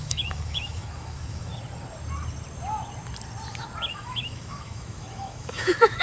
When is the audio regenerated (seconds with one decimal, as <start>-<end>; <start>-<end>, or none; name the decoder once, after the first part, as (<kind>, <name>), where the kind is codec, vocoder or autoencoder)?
0.0-1.5 (autoencoder, DAC-VAE); 3.9-6.0